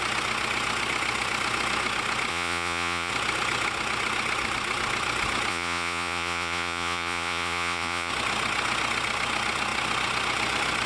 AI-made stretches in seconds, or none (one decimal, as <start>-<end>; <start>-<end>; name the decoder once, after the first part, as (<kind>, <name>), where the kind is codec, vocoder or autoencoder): 2.3-3.1 (vocoder, Vocos); 5.5-8.1